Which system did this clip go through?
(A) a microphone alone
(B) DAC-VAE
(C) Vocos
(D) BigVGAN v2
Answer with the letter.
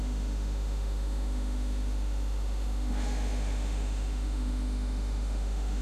B